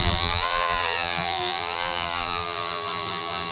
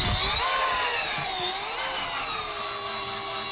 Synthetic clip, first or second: first